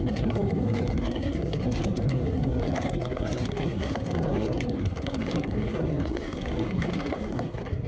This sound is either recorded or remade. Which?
remade